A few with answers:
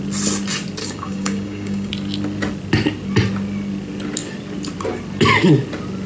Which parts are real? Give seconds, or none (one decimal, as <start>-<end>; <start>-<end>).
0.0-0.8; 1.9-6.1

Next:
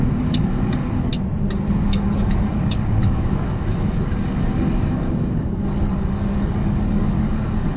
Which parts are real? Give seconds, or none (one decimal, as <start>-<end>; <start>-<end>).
1.1-1.7

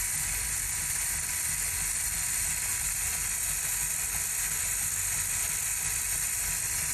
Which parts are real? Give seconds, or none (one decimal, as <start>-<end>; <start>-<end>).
0.0-6.9

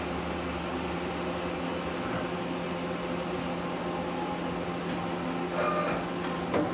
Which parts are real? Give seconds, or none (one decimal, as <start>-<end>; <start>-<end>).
0.0-6.7

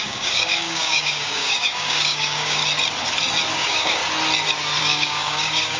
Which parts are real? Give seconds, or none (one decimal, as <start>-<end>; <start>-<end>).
2.6-3.5; 4.0-4.8

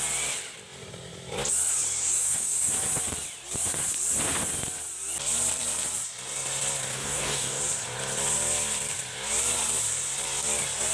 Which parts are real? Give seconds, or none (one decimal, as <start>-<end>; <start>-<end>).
0.0-2.0; 2.7-6.9; 7.6-10.9